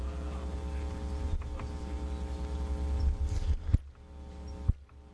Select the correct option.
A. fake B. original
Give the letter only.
B